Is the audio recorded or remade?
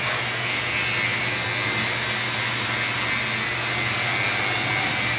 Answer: recorded